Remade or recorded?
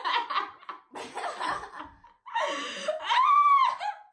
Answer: recorded